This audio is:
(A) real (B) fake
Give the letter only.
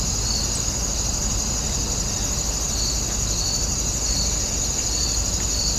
A